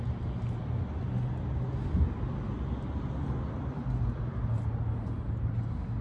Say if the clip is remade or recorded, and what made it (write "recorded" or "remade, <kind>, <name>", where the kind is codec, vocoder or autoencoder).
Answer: recorded